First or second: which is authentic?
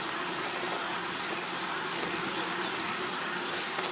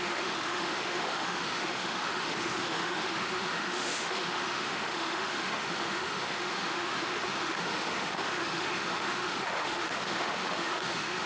first